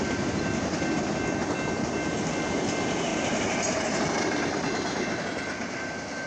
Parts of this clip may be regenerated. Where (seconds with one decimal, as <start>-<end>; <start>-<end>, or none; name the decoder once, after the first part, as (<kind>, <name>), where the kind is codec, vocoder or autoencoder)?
3.1-5.2 (vocoder, BigVGAN v2)

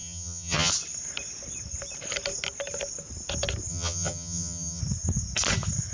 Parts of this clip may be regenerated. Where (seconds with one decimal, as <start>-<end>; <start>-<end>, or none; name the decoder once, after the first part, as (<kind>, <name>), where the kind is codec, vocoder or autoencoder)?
0.0-0.7 (vocoder, HiFi-GAN); 3.7-4.8

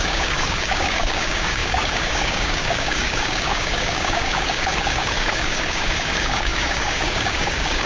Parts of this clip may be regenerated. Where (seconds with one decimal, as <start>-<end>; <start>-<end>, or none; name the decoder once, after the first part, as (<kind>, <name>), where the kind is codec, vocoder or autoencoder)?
0.0-7.9 (codec, DAC)

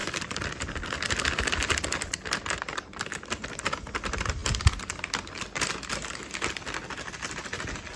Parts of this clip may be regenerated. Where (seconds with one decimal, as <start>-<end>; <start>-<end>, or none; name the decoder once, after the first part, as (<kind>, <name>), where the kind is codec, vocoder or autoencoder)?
none

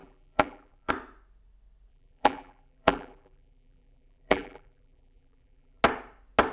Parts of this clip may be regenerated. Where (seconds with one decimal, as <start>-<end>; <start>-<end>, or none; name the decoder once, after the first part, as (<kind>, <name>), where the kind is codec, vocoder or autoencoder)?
0.0-0.9 (vocoder, BigVGAN v2); 1.9-5.8

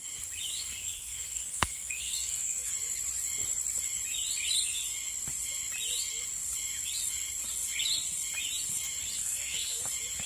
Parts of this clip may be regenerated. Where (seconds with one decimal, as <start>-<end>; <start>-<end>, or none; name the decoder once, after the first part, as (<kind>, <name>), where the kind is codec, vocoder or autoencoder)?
0.8-2.7 (codec, SNAC); 9.2-9.8